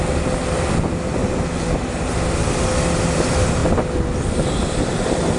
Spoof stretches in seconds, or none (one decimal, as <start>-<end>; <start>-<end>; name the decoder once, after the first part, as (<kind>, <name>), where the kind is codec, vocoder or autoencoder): none